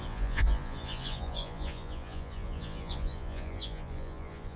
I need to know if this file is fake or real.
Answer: fake